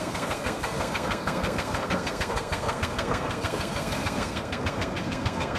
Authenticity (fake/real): fake